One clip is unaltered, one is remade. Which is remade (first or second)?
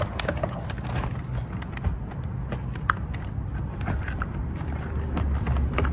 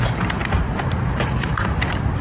second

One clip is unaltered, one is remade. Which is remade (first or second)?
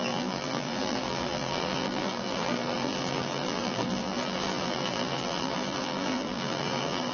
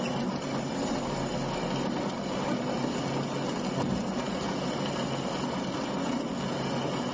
first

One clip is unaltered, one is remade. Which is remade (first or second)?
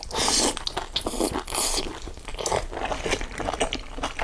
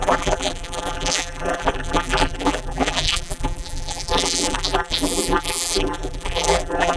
second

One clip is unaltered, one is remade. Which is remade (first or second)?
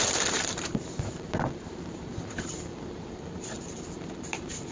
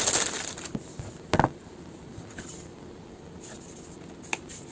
first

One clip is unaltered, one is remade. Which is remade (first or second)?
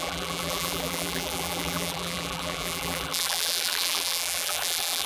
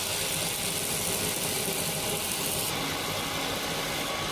first